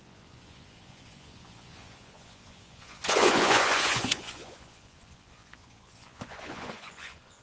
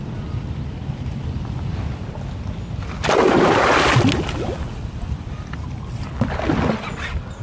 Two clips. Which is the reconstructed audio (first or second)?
first